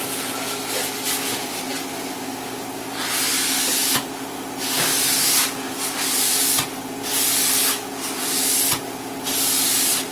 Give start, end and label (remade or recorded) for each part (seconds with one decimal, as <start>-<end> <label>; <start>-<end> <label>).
0.0-10.1 recorded